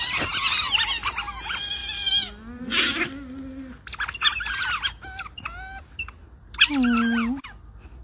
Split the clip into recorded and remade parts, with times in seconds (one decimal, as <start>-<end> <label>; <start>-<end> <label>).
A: 0.0-8.0 recorded